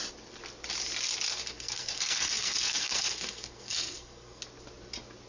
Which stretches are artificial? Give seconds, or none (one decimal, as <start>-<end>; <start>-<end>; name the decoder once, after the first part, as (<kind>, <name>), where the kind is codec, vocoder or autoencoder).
1.3-4.4 (codec, SNAC)